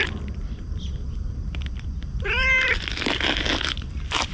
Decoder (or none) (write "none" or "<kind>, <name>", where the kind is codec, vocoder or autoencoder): vocoder, BigVGAN v2